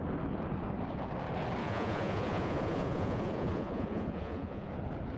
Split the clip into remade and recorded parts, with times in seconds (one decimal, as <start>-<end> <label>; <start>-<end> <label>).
0.0-1.6 recorded; 1.6-4.7 remade; 4.7-5.2 recorded